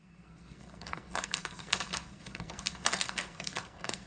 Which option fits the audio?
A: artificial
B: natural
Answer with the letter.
A